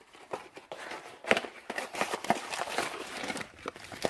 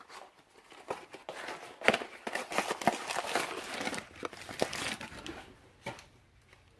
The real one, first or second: second